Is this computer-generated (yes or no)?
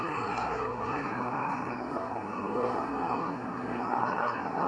yes